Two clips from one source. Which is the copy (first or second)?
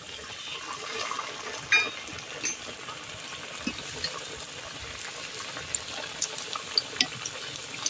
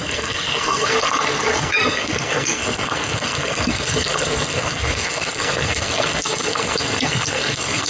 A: second